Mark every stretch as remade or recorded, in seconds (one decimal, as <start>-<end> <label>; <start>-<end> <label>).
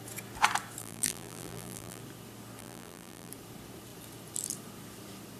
0.0-0.8 recorded; 0.8-2.0 remade; 2.0-2.6 recorded; 2.6-3.3 remade; 3.3-5.4 recorded